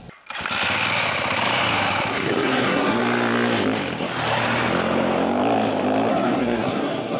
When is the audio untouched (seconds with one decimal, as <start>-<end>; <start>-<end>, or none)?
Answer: 0.0-2.1; 3.0-6.1